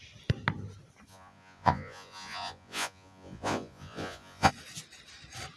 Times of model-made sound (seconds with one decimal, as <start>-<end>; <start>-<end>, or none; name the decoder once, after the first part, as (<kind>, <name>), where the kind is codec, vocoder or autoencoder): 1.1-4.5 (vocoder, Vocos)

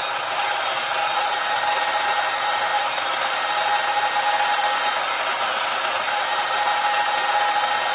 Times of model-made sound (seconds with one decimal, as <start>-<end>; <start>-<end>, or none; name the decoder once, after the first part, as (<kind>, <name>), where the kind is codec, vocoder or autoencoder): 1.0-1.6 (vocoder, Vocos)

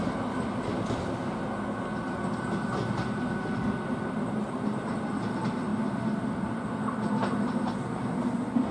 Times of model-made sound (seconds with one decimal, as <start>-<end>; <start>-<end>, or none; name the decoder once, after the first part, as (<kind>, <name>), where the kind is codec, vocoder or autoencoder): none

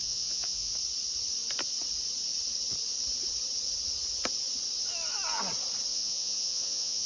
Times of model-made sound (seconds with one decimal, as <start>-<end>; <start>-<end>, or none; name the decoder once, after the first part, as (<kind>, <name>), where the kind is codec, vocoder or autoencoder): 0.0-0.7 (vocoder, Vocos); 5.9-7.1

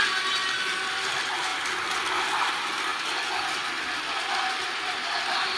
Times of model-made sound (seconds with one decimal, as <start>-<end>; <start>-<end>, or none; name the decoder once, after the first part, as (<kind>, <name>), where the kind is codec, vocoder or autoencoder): 0.0-0.4 (vocoder, BigVGAN v2); 0.9-2.9; 4.2-5.6